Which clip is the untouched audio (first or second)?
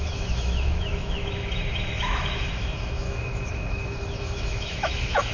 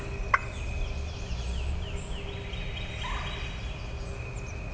second